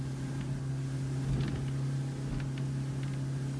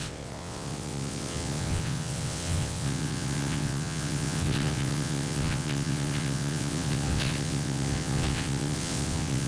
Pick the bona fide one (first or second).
first